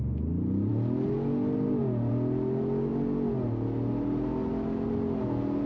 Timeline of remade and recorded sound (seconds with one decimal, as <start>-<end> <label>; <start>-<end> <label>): 0.0-5.7 recorded